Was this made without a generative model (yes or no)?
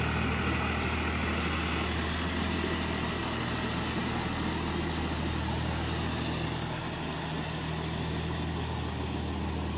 yes